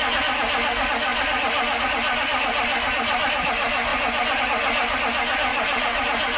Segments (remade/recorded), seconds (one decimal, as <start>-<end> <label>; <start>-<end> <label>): 0.0-5.5 recorded; 5.5-6.4 remade

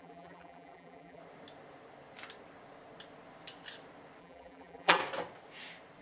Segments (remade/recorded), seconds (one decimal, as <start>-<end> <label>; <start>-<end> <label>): 0.0-1.2 remade; 1.2-4.2 recorded; 4.2-5.0 remade; 5.0-6.0 recorded

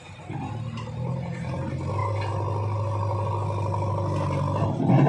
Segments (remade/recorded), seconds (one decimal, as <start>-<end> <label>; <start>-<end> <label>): 0.0-5.1 recorded

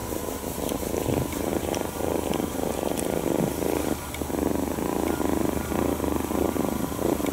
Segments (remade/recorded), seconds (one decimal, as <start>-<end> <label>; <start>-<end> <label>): 0.0-1.5 recorded; 1.5-3.2 remade; 3.2-7.3 recorded